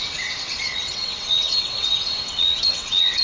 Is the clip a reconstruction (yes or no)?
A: yes